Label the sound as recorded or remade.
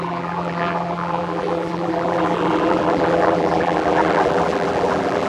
remade